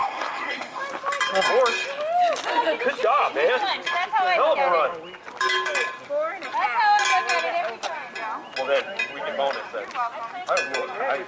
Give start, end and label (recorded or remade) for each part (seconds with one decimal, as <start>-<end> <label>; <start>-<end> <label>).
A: 0.0-0.8 remade; 0.8-11.3 recorded